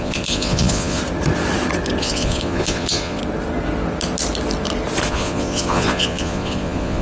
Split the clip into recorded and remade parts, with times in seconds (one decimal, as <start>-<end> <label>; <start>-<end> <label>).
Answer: 0.0-1.0 remade; 1.0-2.0 recorded; 2.0-3.2 remade; 3.2-5.1 recorded; 5.1-7.0 remade